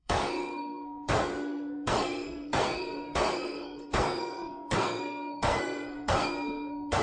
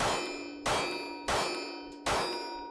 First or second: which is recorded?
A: second